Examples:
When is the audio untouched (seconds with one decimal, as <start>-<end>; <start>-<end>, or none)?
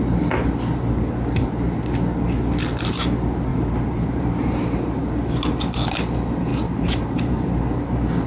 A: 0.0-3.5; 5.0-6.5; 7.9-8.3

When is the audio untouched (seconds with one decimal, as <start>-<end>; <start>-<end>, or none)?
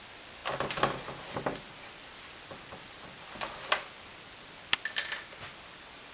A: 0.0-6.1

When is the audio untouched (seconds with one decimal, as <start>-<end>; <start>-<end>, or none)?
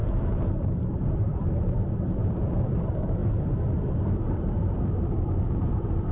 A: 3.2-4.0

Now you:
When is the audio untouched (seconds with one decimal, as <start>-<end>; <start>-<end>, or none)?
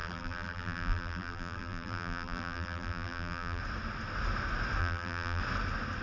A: 3.6-4.8; 5.4-6.0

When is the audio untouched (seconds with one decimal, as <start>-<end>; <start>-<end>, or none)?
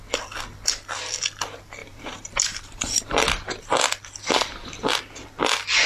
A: 0.0-1.8; 2.8-5.9